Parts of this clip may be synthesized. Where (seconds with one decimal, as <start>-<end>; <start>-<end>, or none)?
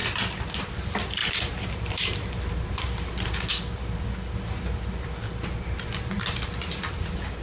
1.2-3.5